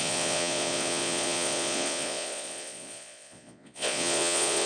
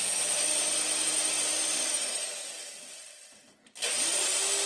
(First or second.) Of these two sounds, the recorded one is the second